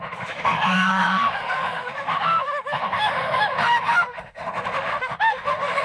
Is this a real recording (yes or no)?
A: no